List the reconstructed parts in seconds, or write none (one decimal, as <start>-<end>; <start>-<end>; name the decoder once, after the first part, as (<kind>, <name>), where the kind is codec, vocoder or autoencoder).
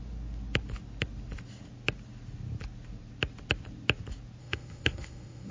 4.4-5.5 (autoencoder, DAC-VAE)